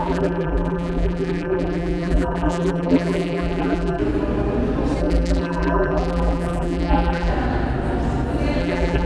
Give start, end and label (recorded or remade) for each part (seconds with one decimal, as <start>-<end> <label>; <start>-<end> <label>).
0.0-4.0 remade; 4.0-5.0 recorded; 5.0-7.3 remade; 7.3-8.6 recorded; 8.6-9.1 remade